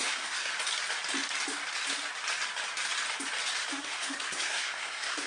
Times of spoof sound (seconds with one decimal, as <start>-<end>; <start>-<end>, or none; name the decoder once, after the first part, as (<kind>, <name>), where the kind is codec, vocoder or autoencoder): 0.0-0.5 (codec, SNAC); 3.7-5.3